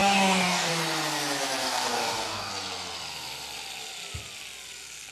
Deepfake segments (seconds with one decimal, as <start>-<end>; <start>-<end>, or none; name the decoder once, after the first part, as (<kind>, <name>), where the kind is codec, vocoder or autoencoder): 0.0-0.7 (codec, DAC); 1.6-2.5